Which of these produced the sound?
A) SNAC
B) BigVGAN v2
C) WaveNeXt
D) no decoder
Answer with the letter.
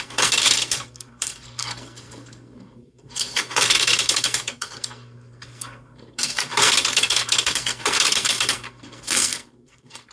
A